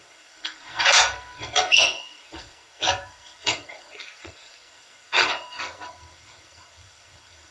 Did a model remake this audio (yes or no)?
yes